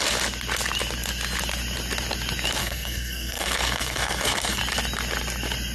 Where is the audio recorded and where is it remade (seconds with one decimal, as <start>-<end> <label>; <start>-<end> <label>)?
0.0-2.6 recorded; 2.6-4.6 remade; 4.6-5.7 recorded